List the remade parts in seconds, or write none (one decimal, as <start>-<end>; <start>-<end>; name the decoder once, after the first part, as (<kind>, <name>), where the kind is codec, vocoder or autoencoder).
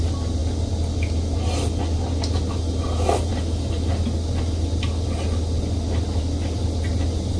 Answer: none